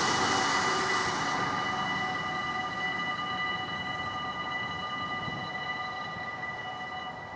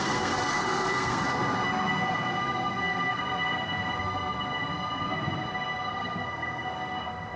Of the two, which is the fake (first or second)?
second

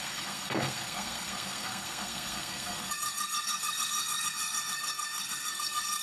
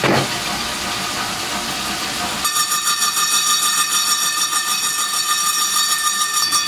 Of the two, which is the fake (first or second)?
first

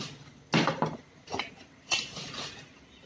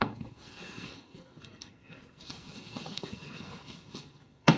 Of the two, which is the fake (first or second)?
second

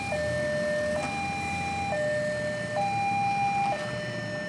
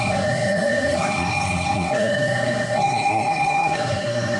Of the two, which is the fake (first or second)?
second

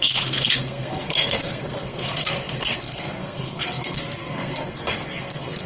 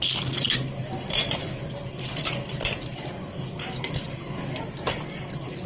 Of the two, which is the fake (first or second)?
first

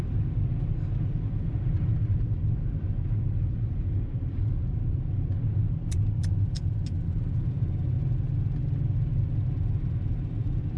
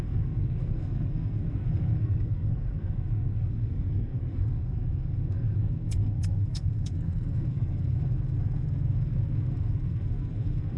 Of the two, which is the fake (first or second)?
second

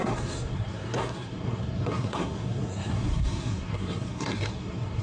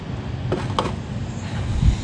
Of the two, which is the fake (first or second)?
first